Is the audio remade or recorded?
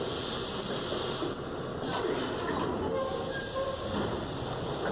recorded